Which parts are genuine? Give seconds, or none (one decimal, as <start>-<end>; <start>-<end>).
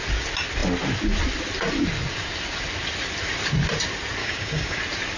0.0-4.2; 4.8-5.2